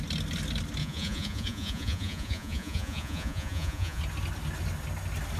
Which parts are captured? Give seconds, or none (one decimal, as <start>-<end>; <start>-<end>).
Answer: 0.0-0.8; 4.0-5.4